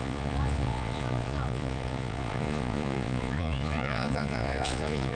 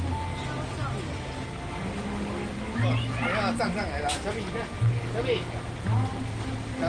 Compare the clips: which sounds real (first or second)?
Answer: second